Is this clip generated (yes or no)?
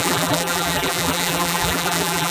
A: yes